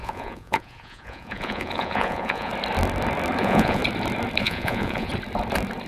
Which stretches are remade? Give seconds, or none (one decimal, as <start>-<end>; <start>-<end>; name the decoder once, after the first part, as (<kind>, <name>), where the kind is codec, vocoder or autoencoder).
0.0-2.5 (vocoder, Vocos); 3.4-3.8; 4.4-5.1